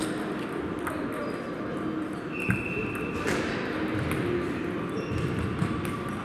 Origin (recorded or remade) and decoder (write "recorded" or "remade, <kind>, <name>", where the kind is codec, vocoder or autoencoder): recorded